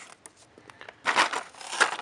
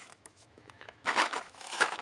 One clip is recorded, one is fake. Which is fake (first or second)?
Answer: second